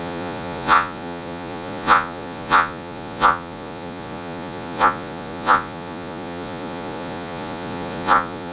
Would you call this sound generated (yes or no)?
yes